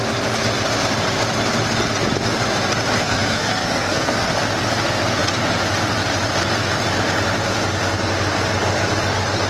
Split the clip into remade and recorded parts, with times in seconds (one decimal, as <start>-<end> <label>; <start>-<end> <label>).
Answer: 0.0-3.0 recorded; 3.0-4.3 remade; 4.3-9.5 recorded